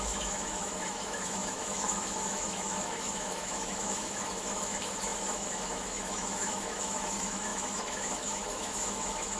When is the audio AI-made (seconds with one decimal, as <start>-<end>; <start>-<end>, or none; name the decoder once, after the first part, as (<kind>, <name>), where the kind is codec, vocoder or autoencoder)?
0.0-9.4 (autoencoder, DAC-VAE)